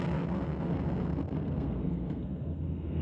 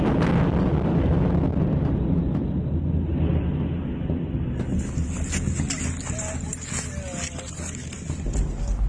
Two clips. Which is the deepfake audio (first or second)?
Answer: first